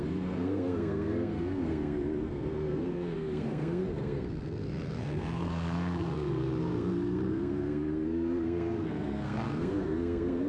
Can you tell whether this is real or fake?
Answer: fake